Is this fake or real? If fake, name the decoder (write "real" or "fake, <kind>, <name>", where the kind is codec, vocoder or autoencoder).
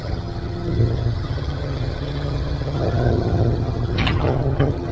fake, vocoder, HiFi-GAN